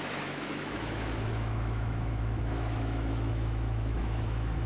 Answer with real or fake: fake